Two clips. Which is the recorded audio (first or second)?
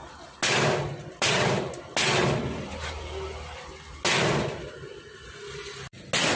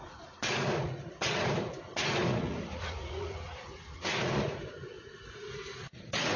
first